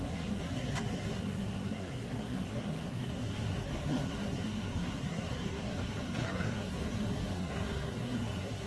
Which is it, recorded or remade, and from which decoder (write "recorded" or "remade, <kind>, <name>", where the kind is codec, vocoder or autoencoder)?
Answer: remade, codec, SNAC